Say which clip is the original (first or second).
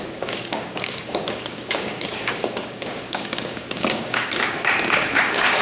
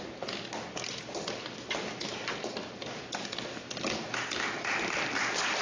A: second